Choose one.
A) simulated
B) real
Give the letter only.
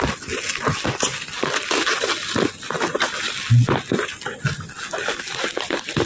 B